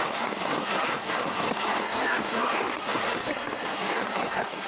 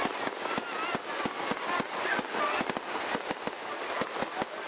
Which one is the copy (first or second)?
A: first